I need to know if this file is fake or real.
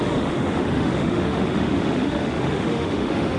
fake